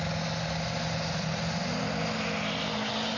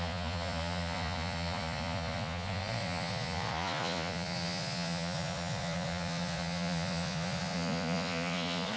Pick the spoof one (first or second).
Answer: second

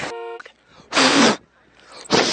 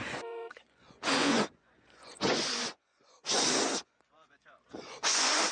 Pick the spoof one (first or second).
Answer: second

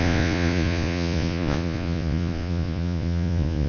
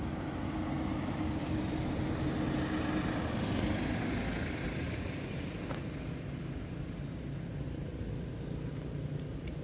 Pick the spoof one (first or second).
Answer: first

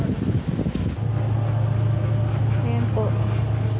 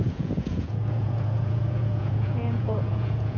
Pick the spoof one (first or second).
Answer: second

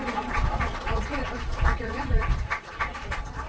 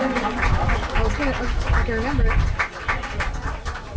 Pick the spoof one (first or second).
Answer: first